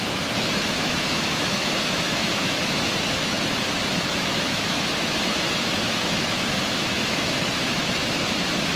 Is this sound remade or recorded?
remade